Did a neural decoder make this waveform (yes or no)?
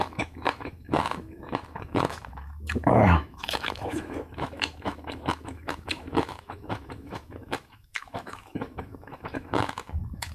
yes